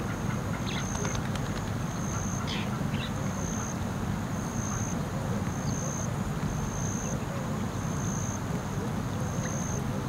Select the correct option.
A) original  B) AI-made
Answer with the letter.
A